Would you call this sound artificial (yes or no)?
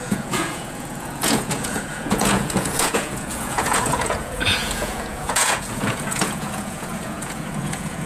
yes